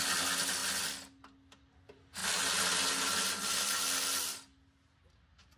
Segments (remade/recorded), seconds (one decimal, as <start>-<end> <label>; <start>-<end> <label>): 0.0-5.6 recorded